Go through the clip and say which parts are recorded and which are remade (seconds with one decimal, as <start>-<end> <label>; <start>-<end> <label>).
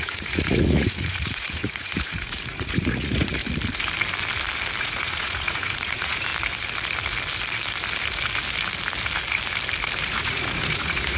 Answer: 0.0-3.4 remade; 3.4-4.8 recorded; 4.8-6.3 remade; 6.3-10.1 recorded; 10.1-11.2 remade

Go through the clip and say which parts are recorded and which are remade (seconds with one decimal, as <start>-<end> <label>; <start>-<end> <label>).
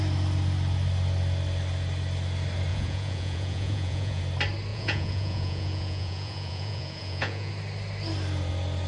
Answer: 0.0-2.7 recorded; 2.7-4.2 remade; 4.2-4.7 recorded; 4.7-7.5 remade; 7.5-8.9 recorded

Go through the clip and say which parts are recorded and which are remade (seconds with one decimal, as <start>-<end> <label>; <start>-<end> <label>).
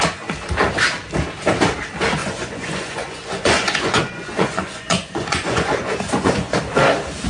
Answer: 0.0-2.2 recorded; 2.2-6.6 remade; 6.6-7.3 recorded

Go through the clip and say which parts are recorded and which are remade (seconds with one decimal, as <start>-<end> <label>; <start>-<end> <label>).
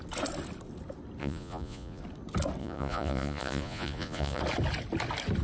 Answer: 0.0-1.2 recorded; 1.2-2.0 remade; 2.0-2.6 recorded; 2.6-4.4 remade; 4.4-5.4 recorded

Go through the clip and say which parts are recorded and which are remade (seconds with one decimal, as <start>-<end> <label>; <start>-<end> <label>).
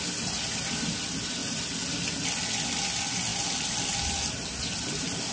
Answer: 0.0-5.3 recorded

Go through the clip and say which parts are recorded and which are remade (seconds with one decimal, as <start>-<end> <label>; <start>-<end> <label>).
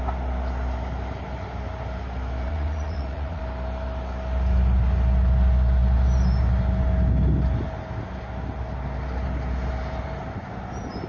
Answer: 0.0-2.5 recorded; 2.5-3.4 remade; 3.4-11.1 recorded